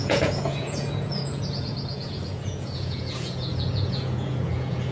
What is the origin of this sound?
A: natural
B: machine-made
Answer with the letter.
B